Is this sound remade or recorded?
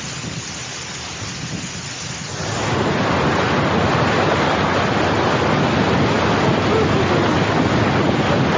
recorded